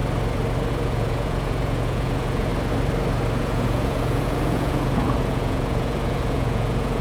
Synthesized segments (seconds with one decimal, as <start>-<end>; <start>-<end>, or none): 0.7-2.5; 3.4-7.0